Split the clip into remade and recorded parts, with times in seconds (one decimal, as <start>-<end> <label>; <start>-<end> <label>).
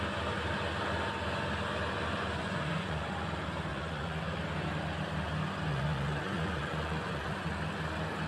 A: 0.0-2.4 recorded; 2.4-3.3 remade; 3.3-3.7 recorded; 3.7-4.2 remade; 4.2-5.7 recorded; 5.7-7.5 remade; 7.5-8.3 recorded